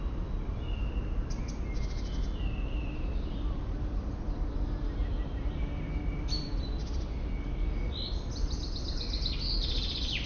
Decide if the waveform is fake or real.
real